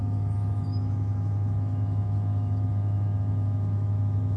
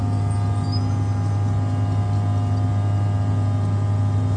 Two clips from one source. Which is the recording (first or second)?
second